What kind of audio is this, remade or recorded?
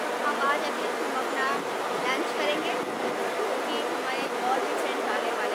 recorded